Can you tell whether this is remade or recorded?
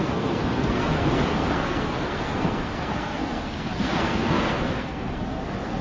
remade